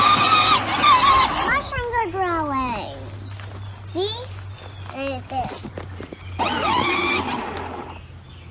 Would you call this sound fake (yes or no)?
no